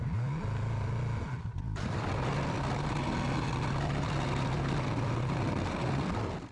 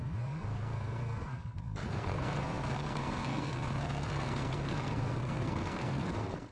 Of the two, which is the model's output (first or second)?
second